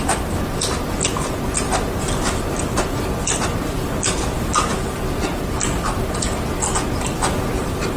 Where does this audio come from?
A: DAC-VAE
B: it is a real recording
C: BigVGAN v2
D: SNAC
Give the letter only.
B